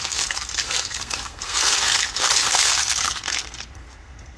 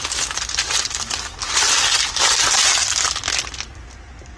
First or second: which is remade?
first